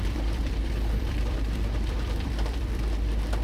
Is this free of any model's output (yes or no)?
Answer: no